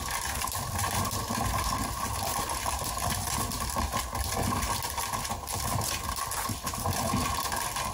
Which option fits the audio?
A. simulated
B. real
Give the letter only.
B